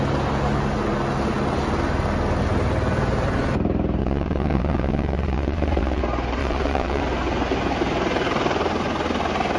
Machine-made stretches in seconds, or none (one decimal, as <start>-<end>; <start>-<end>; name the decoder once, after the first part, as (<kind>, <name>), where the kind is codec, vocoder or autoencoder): 4.0-6.0 (vocoder, WaveNeXt); 6.4-7.0